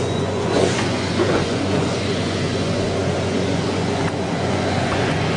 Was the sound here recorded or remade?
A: remade